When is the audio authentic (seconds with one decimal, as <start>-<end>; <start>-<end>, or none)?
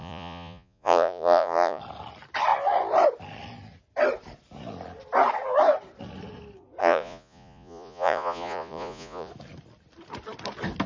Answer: 1.8-6.8; 9.3-10.9